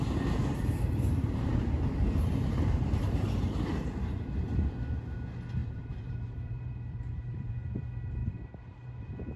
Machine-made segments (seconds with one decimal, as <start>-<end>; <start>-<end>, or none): 0.4-3.5; 5.6-7.5; 8.2-9.0